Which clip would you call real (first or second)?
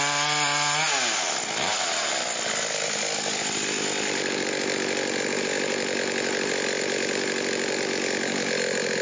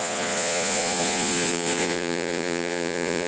first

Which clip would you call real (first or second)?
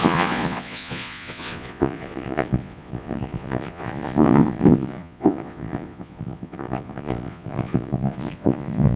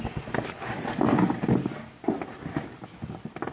second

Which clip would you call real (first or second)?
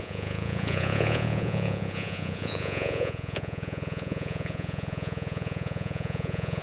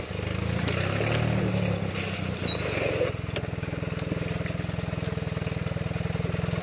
second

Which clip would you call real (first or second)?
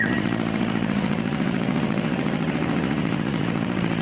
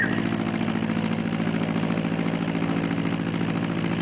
second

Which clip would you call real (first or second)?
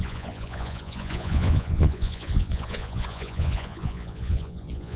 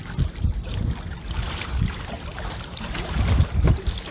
second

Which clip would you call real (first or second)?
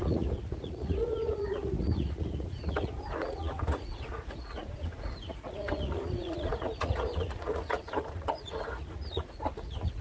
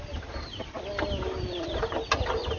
second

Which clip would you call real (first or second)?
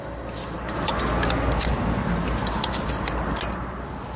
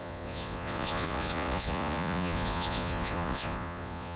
first